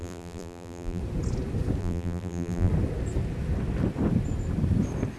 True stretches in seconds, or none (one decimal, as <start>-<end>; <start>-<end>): 1.0-1.8; 2.7-5.2